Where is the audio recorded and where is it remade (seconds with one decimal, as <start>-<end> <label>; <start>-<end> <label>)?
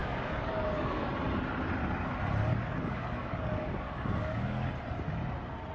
0.0-1.1 remade; 1.1-2.5 recorded; 2.5-4.7 remade; 4.7-5.7 recorded